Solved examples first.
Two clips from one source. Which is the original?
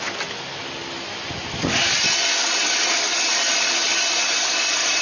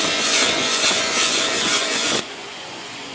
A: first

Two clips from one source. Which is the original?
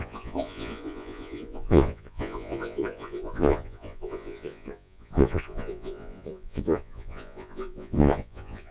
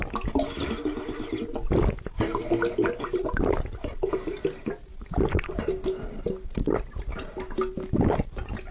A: second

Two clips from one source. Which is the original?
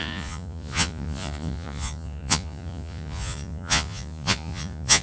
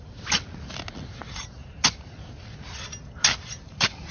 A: second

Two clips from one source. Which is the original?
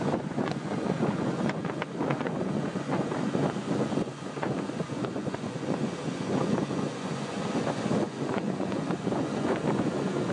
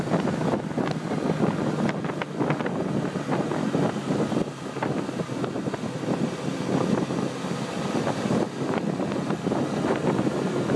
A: second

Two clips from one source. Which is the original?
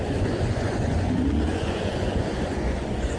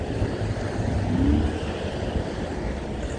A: second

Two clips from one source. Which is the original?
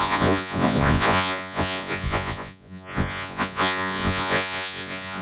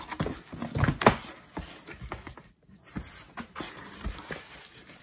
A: second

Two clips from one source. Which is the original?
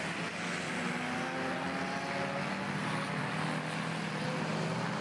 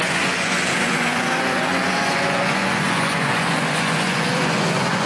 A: first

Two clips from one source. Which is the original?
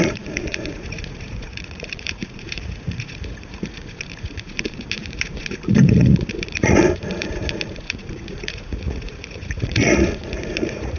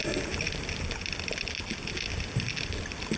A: second